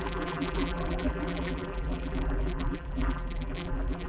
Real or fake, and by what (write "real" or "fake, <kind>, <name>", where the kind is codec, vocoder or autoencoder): fake, vocoder, BigVGAN v2